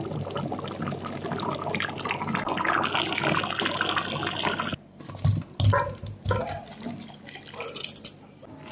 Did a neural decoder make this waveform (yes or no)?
no